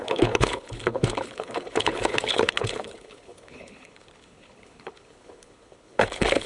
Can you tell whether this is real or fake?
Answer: fake